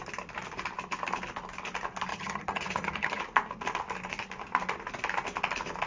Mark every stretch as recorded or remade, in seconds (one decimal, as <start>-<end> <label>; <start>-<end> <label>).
0.0-2.1 recorded; 2.1-3.2 remade; 3.2-5.9 recorded